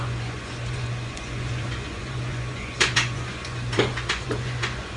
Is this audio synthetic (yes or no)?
yes